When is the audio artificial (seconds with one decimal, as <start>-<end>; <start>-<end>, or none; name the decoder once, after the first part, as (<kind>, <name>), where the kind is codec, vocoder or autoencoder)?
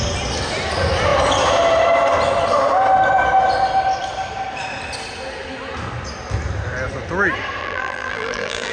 7.6-8.7 (vocoder, BigVGAN v2)